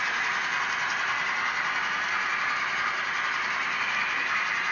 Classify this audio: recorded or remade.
recorded